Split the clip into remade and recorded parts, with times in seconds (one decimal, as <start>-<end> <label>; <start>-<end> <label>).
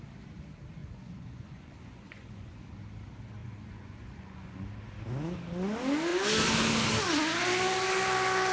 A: 0.0-0.8 recorded; 0.8-2.6 remade; 2.6-3.4 recorded; 3.4-4.7 remade; 4.7-8.5 recorded